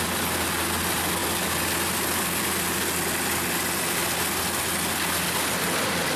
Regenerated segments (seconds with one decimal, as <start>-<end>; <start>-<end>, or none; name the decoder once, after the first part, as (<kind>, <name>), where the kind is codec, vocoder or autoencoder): none